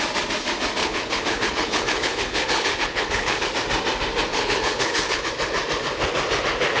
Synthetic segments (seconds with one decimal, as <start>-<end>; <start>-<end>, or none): 0.8-3.5; 4.3-5.3